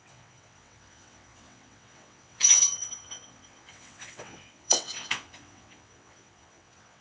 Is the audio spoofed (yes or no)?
yes